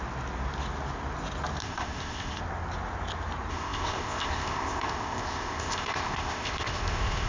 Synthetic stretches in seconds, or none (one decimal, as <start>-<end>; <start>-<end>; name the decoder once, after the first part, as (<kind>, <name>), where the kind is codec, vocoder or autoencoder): 1.6-2.4 (codec, ZipCodec); 3.5-7.3